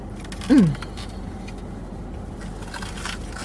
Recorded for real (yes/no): yes